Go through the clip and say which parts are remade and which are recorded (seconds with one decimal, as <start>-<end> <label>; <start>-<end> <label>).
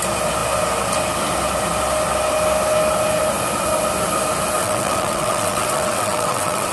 0.0-4.6 recorded; 4.6-6.7 remade